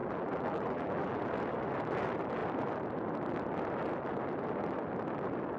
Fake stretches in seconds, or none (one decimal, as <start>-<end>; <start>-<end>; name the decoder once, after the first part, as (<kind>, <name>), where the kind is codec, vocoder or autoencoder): 0.0-1.2 (vocoder, BigVGAN v2)